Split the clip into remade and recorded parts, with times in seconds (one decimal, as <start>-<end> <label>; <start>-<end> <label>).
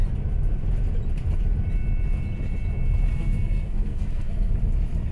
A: 0.0-3.1 recorded; 3.1-4.5 remade; 4.5-5.1 recorded